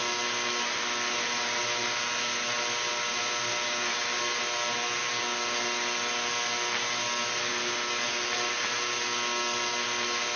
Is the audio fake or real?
real